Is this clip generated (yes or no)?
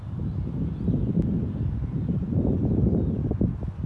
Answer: no